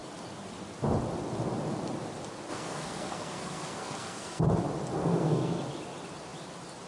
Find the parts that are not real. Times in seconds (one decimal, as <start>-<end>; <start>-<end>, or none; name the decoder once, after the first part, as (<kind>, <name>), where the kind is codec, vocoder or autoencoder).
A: 2.5-4.4 (codec, SNAC); 5.0-5.6